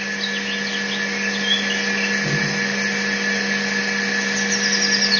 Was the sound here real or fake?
real